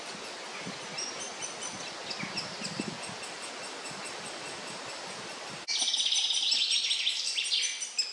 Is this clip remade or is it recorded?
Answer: recorded